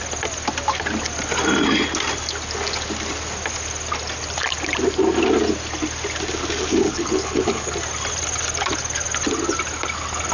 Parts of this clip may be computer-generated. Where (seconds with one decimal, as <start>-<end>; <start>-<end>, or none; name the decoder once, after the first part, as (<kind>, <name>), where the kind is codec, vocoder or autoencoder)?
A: 6.7-7.7 (codec, HILCodec)